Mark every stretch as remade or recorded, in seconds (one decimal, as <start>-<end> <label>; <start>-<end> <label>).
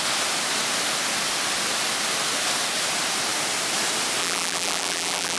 0.0-4.2 recorded; 4.2-5.4 remade